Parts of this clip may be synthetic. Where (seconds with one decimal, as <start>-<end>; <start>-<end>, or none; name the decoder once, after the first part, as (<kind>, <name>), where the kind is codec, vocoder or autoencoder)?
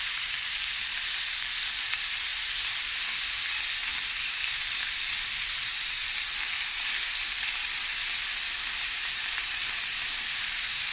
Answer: 0.0-2.3 (vocoder, BigVGAN v2); 3.9-7.9; 8.8-10.9